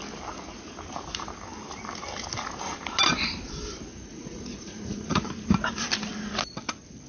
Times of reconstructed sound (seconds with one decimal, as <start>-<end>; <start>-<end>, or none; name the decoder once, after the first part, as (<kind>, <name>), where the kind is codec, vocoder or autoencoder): 3.9-5.3 (vocoder, Vocos)